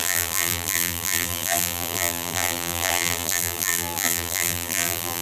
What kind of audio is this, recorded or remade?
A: remade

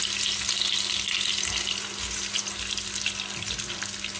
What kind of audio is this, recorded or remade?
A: recorded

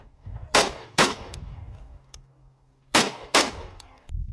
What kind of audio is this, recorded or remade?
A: remade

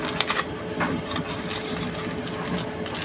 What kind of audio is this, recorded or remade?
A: recorded